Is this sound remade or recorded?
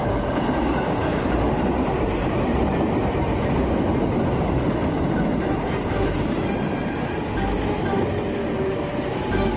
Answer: recorded